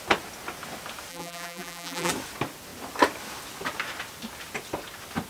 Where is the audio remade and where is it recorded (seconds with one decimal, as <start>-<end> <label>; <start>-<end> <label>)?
0.0-1.1 recorded; 1.1-2.1 remade; 2.1-5.3 recorded